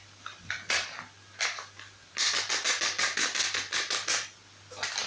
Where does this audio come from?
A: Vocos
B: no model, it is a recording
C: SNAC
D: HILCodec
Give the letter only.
B